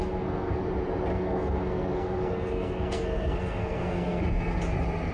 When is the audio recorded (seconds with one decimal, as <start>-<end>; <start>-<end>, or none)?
0.6-1.1; 4.2-5.1